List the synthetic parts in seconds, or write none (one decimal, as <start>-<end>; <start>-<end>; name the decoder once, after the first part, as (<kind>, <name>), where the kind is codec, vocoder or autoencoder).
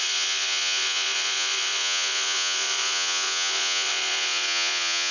0.0-5.1 (vocoder, Vocos)